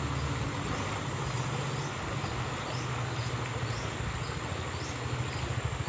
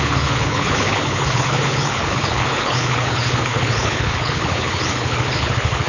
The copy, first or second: second